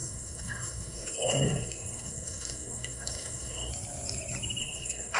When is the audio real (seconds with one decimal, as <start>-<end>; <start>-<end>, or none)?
3.7-4.6

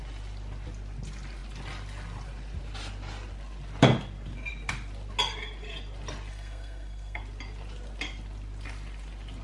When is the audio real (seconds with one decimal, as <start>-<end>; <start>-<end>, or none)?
0.0-6.3; 7.2-9.4

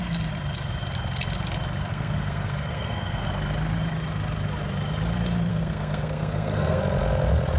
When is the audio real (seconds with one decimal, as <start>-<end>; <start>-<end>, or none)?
0.0-1.9; 3.3-5.5; 6.8-7.6